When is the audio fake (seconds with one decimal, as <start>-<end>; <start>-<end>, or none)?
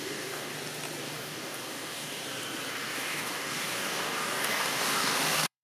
0.0-0.5; 1.0-2.2; 2.7-5.6